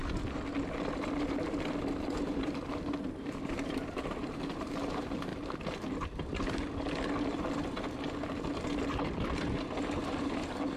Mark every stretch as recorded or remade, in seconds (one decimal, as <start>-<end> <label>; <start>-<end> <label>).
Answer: 0.0-2.1 recorded; 2.1-5.3 remade; 5.3-10.2 recorded; 10.2-10.8 remade